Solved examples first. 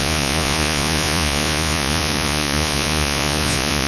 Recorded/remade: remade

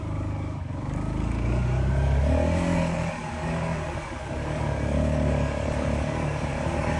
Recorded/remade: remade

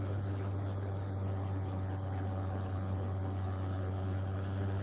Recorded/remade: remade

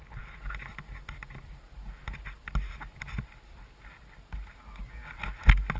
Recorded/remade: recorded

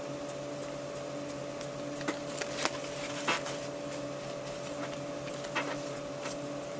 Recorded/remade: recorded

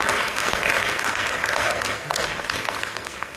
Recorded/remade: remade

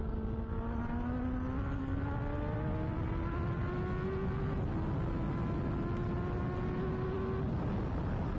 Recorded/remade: recorded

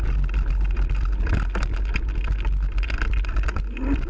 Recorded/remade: recorded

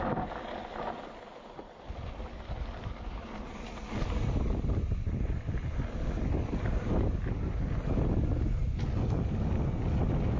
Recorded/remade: recorded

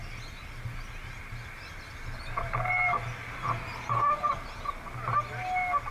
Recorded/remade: recorded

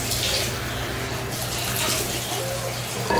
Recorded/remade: recorded